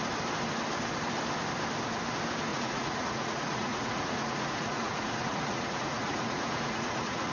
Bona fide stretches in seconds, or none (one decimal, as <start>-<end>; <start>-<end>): 0.0-2.5